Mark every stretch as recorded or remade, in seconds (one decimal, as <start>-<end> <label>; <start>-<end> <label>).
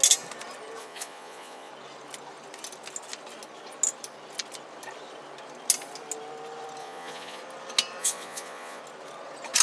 0.0-0.8 recorded; 0.8-1.7 remade; 1.7-6.8 recorded; 6.8-7.4 remade; 7.4-8.0 recorded; 8.0-8.8 remade; 8.8-9.6 recorded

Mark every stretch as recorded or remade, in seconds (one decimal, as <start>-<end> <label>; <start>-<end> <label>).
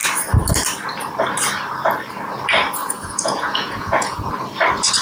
0.0-2.8 recorded; 2.8-4.3 remade; 4.3-5.0 recorded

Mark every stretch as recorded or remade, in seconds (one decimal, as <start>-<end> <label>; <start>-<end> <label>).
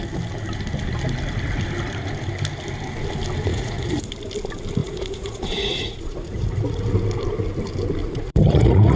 0.0-3.5 recorded; 3.5-4.1 remade; 4.1-4.8 recorded; 4.8-6.9 remade; 6.9-8.0 recorded; 8.0-9.0 remade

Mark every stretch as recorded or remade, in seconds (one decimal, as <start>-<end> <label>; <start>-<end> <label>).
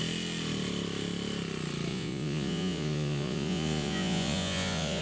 0.0-1.9 recorded; 1.9-5.0 remade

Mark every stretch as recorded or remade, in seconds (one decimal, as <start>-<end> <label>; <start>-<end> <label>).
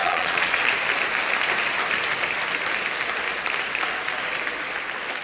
0.0-0.6 remade; 0.6-5.2 recorded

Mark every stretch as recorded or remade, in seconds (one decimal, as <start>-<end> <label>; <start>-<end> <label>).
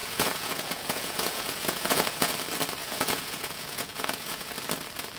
0.0-2.3 remade; 2.3-2.8 recorded; 2.8-4.5 remade; 4.5-5.2 recorded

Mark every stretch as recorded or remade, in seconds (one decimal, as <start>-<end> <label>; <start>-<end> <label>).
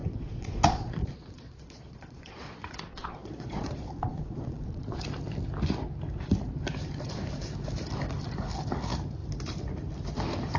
0.0-5.0 remade; 5.0-10.6 recorded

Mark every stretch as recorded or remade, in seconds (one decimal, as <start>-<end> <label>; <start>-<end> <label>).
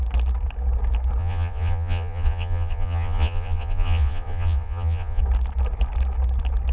0.0-1.2 recorded; 1.2-5.2 remade; 5.2-6.7 recorded